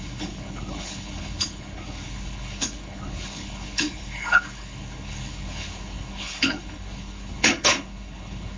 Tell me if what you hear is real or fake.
fake